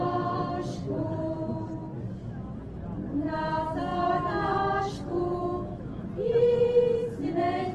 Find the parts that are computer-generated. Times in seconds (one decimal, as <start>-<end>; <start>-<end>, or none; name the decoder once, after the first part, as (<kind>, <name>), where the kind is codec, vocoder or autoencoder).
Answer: 5.4-6.1 (autoencoder, DAC-VAE)